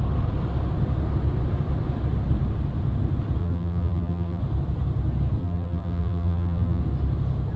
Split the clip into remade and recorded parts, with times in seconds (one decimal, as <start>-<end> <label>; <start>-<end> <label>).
0.0-3.4 recorded; 3.4-4.4 remade; 4.4-5.4 recorded; 5.4-6.8 remade; 6.8-7.6 recorded

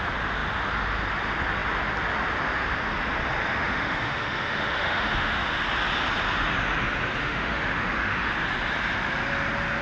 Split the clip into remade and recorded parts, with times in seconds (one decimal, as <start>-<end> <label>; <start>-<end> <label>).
0.0-3.5 recorded; 3.5-5.6 remade; 5.6-7.2 recorded; 7.2-8.3 remade; 8.3-9.8 recorded

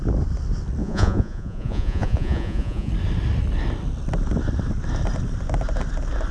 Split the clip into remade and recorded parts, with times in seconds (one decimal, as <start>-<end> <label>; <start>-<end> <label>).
0.0-0.8 recorded; 0.8-2.9 remade; 2.9-6.3 recorded

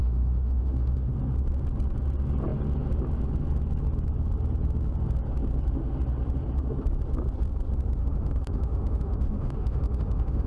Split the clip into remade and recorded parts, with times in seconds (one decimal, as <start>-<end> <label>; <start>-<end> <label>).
0.0-1.1 remade; 1.1-8.0 recorded; 8.0-10.5 remade

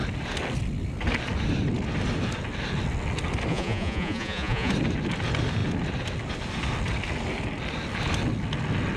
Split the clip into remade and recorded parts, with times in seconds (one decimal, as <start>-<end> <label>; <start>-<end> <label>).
0.0-3.5 recorded; 3.5-4.7 remade; 4.7-9.0 recorded

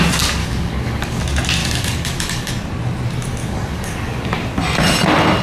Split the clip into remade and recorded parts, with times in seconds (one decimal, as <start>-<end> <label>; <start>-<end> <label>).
0.0-0.4 recorded; 0.4-1.2 remade; 1.2-1.6 recorded; 1.6-2.5 remade; 2.5-3.4 recorded; 3.4-4.3 remade; 4.3-5.4 recorded